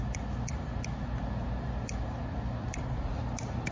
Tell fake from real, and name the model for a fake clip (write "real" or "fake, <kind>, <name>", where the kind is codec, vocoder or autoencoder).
real